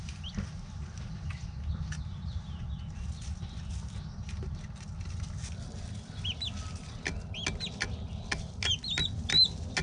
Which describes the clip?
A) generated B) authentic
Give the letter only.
B